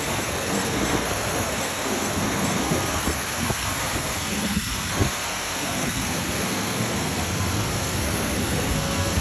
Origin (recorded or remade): remade